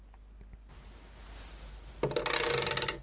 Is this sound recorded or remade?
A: recorded